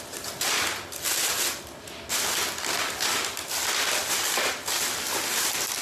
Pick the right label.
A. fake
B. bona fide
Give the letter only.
B